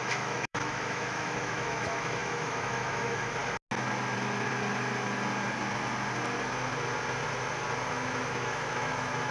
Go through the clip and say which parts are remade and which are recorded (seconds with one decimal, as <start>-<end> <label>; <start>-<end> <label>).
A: 0.0-3.4 remade; 3.4-7.9 recorded; 7.9-9.3 remade